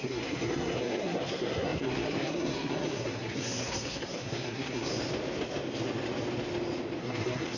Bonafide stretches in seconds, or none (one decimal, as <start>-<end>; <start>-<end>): 4.9-7.0